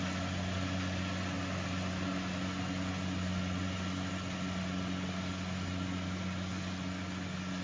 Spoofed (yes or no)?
no